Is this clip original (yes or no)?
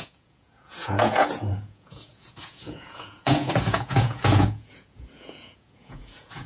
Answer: no